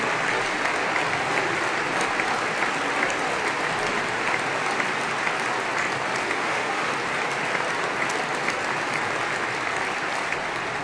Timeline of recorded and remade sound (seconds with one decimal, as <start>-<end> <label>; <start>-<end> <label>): 0.0-6.2 recorded; 6.2-6.9 remade; 6.9-10.8 recorded

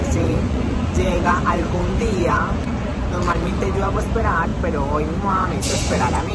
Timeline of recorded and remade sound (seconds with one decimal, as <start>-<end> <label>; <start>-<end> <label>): 0.0-4.5 remade; 4.5-5.3 recorded; 5.3-6.3 remade

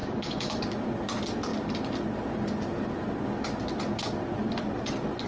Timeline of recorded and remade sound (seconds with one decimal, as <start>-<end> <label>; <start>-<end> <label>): 0.0-0.6 remade; 0.6-5.3 recorded

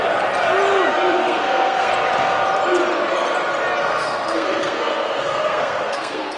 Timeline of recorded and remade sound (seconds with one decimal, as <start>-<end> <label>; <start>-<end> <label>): 0.0-1.2 recorded; 1.2-1.9 remade; 1.9-3.8 recorded; 3.8-6.4 remade

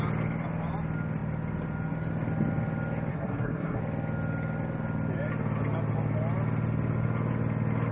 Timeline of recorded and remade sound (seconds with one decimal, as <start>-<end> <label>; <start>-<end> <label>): 0.0-3.1 recorded; 3.1-3.8 remade; 3.8-7.9 recorded